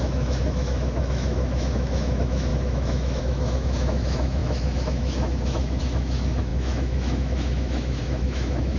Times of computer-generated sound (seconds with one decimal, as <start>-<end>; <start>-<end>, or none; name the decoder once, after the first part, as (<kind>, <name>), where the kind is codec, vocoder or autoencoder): 0.0-8.8 (autoencoder, DAC-VAE)